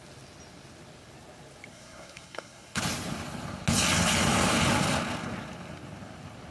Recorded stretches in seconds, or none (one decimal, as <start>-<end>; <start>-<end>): 0.0-1.7; 2.8-6.5